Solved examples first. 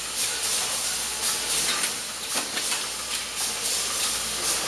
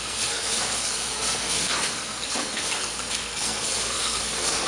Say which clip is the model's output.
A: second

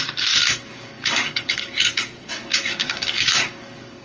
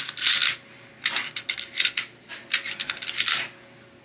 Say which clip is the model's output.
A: first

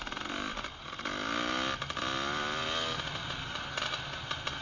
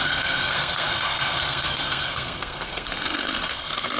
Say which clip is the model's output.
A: second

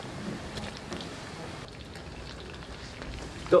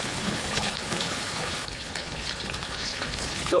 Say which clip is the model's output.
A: second